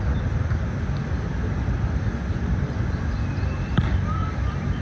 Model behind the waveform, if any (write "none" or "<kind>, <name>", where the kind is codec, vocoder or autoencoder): none